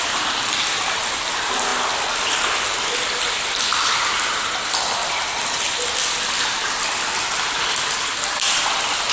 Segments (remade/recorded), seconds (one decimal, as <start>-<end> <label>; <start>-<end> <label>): 0.0-9.1 recorded